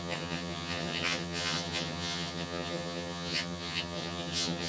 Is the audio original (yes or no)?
no